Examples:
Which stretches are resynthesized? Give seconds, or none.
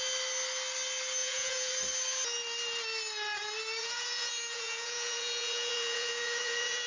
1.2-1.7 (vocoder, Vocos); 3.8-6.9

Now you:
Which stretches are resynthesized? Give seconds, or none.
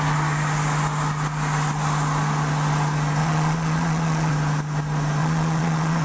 3.2-4.3 (vocoder, Vocos); 5.2-6.0